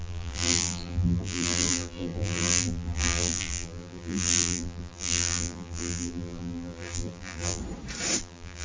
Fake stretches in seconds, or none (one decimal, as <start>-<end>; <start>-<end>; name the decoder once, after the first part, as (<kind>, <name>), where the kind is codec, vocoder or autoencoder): 0.0-7.6 (vocoder, BigVGAN v2); 8.2-8.6